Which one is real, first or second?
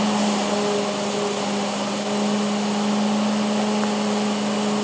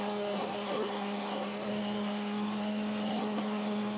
first